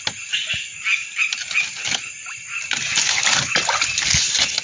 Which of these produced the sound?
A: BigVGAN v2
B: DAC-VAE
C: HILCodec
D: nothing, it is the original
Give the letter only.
D